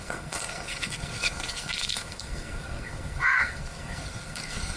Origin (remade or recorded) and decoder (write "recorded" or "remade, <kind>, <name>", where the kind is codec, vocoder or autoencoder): remade, codec, SNAC